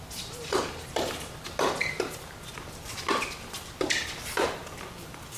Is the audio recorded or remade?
recorded